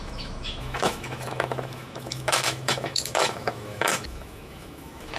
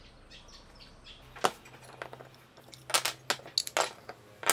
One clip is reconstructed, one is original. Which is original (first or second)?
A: second